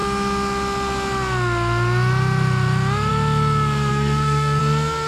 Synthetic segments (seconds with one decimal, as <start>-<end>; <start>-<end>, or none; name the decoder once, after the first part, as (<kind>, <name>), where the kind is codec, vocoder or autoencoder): 3.9-4.6 (codec, SNAC)